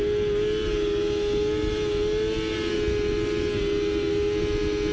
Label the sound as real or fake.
real